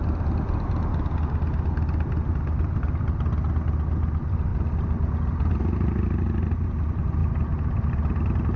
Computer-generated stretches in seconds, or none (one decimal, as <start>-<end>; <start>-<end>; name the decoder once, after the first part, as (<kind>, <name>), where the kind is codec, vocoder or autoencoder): none